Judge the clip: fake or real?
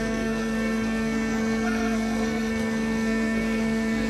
fake